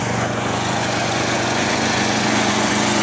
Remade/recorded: remade